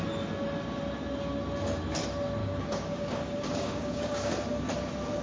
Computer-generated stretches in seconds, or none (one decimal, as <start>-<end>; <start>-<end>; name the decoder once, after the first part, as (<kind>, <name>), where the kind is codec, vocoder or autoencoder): 2.4-4.3 (codec, DAC)